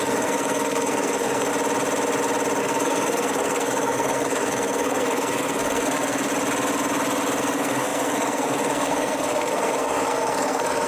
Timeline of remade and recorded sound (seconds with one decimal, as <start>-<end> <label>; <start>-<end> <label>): 0.0-1.5 remade; 1.5-2.6 recorded; 2.6-6.3 remade; 6.3-7.4 recorded; 7.4-10.9 remade